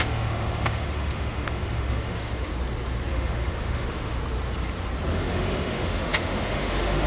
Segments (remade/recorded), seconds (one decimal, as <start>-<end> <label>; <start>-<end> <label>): 0.0-2.5 remade; 2.5-3.1 recorded; 3.1-4.2 remade; 4.2-5.1 recorded; 5.1-7.1 remade